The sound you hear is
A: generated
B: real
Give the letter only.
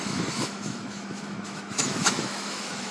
A